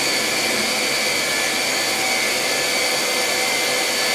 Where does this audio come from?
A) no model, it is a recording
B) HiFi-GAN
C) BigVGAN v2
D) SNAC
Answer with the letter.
A